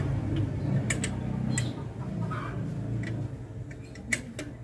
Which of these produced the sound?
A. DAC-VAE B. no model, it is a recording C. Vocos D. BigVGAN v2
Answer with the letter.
B